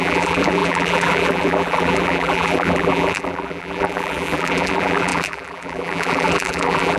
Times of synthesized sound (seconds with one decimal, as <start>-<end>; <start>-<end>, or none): 0.0-7.0